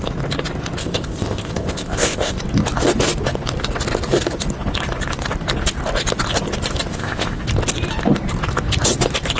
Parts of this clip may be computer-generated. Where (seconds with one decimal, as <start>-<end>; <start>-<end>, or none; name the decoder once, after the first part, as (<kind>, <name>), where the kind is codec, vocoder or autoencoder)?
0.8-2.4 (codec, ZipCodec); 6.9-7.4